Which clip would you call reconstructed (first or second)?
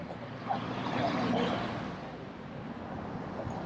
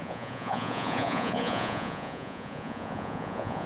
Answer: second